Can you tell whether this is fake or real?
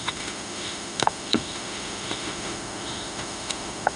fake